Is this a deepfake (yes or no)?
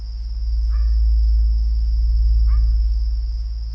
no